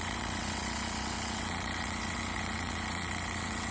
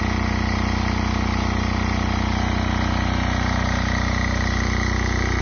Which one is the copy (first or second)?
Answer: first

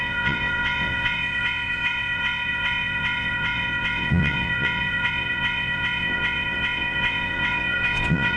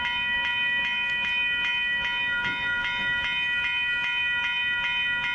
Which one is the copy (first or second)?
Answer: first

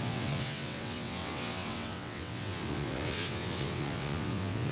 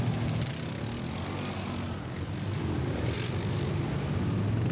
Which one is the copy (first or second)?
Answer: first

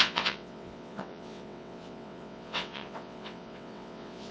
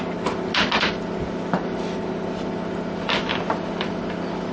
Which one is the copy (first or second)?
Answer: first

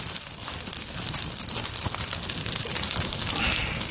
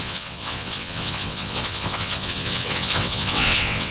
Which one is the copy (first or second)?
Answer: second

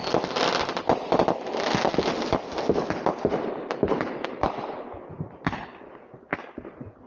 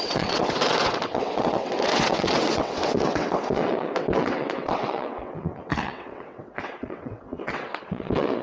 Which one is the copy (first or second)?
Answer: second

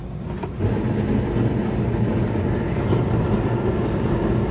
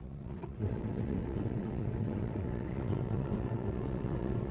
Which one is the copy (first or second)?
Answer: second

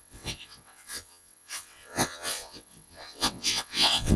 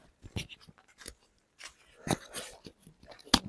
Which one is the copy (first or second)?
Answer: first